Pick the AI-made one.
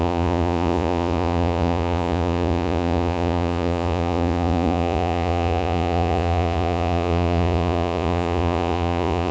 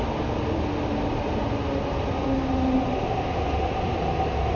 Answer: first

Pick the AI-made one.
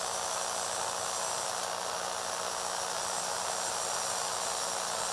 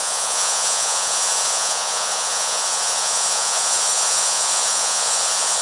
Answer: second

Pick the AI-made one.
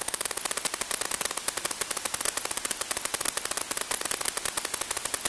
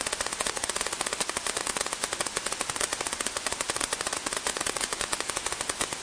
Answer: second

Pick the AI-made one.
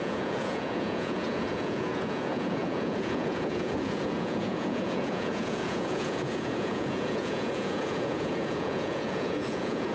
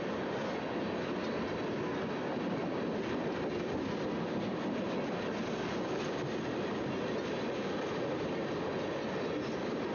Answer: first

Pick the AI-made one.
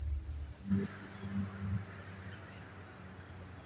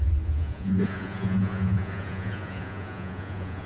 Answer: second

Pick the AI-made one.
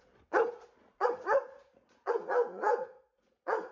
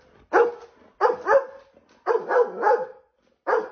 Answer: first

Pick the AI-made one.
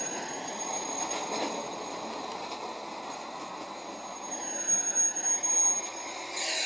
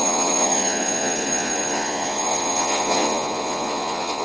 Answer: second